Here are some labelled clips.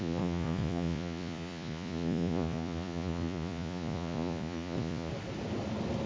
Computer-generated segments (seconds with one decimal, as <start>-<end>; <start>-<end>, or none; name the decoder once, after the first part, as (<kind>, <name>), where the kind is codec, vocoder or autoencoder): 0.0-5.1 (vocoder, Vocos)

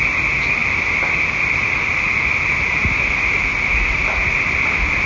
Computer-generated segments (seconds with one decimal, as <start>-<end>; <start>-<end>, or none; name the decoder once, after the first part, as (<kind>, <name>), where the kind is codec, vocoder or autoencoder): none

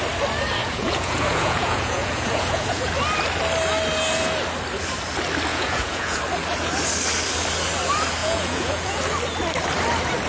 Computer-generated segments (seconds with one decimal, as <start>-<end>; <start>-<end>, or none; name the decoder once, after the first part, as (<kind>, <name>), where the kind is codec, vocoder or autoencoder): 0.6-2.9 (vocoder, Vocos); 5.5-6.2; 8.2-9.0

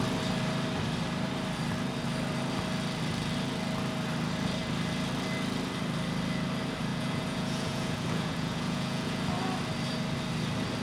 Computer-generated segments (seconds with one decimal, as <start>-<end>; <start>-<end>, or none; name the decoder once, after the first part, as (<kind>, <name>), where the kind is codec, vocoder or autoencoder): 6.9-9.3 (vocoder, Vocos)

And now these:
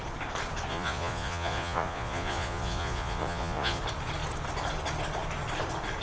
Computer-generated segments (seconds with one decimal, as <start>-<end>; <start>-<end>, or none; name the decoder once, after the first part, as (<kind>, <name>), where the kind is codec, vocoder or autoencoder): 0.7-3.8 (vocoder, Vocos)

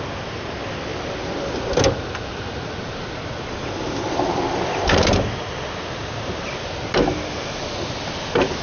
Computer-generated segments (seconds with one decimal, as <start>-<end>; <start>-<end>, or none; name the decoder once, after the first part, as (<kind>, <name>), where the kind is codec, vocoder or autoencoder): none